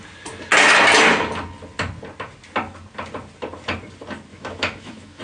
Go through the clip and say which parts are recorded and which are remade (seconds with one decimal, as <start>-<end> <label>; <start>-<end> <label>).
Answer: 0.0-4.3 recorded; 4.3-5.2 remade

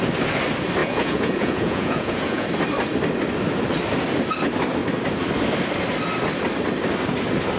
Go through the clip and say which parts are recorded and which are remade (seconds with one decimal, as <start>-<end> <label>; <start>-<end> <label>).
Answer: 0.0-0.8 recorded; 0.8-2.5 remade; 2.5-7.6 recorded

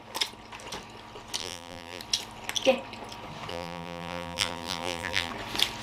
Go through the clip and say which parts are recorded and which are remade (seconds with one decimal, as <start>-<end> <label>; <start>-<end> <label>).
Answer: 0.0-1.4 recorded; 1.4-2.0 remade; 2.0-3.5 recorded; 3.5-5.3 remade; 5.3-5.8 recorded

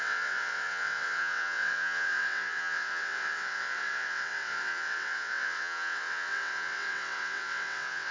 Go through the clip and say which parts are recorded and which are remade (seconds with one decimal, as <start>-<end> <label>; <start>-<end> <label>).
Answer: 0.0-8.1 remade